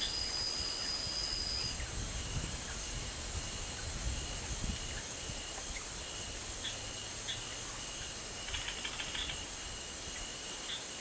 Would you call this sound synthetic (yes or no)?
no